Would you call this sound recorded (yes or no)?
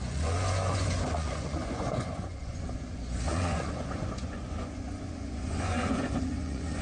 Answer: no